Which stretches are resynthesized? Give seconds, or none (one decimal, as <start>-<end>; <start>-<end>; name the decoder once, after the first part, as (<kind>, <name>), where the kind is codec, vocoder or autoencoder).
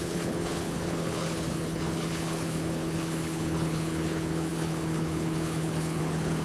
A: 0.0-6.4 (codec, HILCodec)